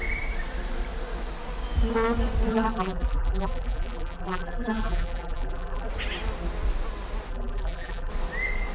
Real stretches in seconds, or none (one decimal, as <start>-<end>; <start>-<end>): 0.0-2.5; 5.9-7.3; 8.1-8.7